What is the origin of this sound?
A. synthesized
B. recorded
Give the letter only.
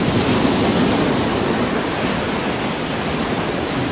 B